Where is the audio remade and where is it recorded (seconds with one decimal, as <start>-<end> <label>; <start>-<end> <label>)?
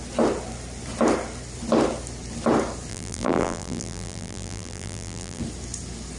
0.0-2.9 recorded; 2.9-5.4 remade; 5.4-6.2 recorded